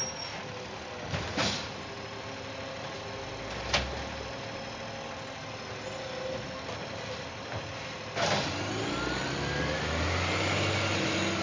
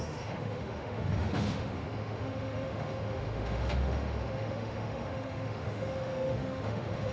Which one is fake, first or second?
second